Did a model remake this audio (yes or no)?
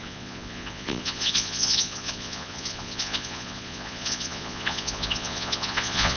yes